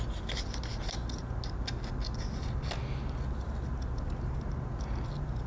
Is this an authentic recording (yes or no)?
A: yes